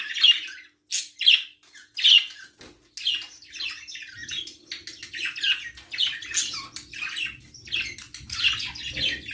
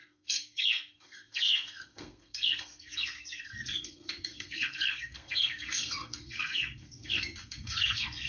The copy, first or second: second